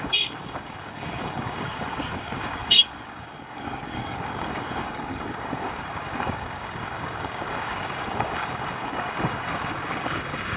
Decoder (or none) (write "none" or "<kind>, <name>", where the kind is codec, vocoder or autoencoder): codec, DAC